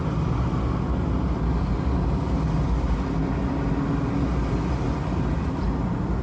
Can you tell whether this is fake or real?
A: real